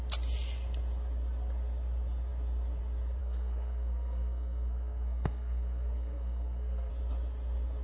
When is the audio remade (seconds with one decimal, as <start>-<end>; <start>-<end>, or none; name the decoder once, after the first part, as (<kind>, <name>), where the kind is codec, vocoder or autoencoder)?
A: 3.2-6.9 (codec, SNAC)